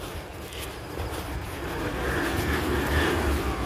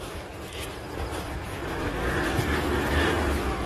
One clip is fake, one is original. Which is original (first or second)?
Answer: second